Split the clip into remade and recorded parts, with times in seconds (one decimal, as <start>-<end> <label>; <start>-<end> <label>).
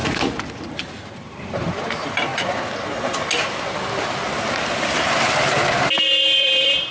0.0-0.7 recorded; 0.7-2.3 remade; 2.3-6.4 recorded; 6.4-6.9 remade